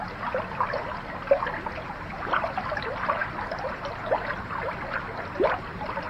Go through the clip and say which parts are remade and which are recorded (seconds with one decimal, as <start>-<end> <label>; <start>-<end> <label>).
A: 0.0-3.2 recorded; 3.2-6.1 remade